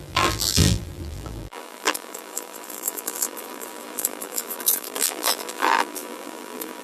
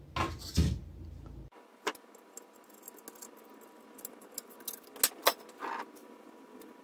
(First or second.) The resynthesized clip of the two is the first